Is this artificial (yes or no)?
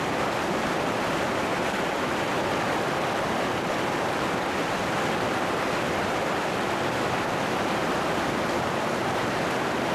no